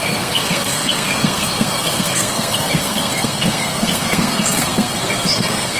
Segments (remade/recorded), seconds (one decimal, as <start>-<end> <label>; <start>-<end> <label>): 0.0-5.8 remade